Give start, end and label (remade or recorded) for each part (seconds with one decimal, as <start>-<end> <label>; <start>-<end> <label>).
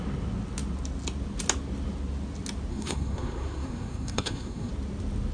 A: 0.0-2.7 recorded; 2.7-4.7 remade; 4.7-5.3 recorded